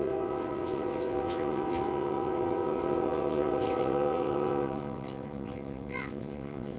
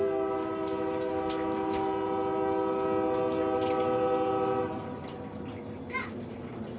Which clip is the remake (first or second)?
first